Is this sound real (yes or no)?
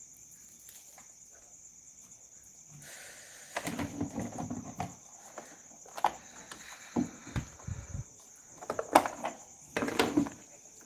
yes